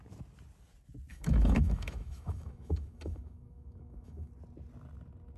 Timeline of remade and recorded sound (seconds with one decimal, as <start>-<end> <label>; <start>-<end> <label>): 0.0-1.1 recorded; 1.1-4.3 remade; 4.3-5.4 recorded